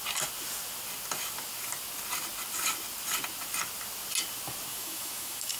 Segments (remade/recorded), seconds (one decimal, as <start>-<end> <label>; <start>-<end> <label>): 0.0-4.7 recorded; 4.7-5.6 remade

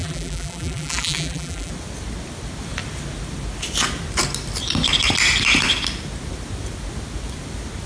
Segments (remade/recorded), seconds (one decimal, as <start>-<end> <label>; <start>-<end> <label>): 0.0-1.7 remade; 1.7-7.9 recorded

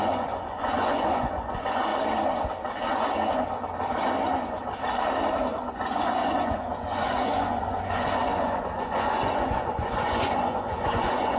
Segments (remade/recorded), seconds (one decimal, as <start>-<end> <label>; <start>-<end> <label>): 0.0-1.9 remade; 1.9-5.7 recorded; 5.7-11.4 remade

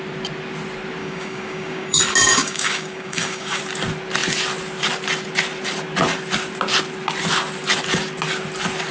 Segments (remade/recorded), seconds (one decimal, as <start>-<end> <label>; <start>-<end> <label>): 0.0-1.0 recorded; 1.0-2.0 remade; 2.0-2.4 recorded; 2.4-3.6 remade; 3.6-8.9 recorded